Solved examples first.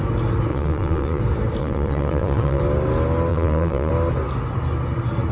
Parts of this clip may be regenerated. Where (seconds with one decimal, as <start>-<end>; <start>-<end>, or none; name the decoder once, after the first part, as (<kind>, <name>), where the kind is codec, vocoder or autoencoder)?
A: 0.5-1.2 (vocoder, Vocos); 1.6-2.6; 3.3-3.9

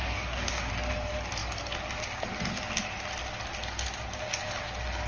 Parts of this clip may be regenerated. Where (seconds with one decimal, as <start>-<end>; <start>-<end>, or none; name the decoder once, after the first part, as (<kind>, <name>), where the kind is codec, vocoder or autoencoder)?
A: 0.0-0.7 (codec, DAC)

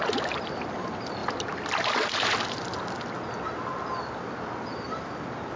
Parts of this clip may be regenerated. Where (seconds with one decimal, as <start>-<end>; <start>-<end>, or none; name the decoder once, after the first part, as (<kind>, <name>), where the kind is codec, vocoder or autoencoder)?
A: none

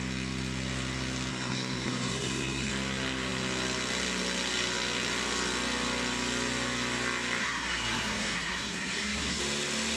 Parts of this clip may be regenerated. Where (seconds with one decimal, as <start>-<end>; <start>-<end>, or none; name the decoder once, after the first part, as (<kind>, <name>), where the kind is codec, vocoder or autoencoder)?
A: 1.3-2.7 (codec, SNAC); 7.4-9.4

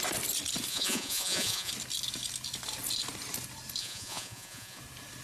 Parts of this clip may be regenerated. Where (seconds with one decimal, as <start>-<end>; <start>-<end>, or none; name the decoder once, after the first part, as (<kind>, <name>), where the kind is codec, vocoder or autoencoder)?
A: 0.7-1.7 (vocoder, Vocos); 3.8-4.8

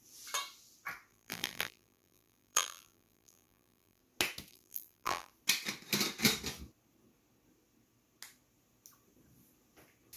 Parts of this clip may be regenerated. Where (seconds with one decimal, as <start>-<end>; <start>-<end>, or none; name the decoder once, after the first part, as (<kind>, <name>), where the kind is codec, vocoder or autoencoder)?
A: 1.1-4.0 (vocoder, BigVGAN v2); 4.5-5.3

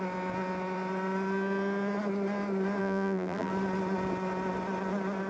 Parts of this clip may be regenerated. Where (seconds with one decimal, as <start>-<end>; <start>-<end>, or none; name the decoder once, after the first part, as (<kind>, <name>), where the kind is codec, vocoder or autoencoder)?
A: 2.8-3.5 (vocoder, BigVGAN v2)

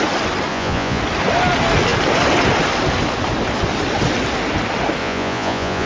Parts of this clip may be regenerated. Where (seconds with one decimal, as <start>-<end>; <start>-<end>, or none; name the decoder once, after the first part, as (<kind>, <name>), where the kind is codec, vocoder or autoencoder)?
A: 0.5-1.0 (vocoder, Vocos); 5.0-5.9